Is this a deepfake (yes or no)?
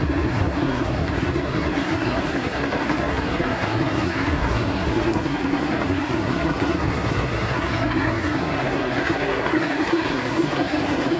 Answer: yes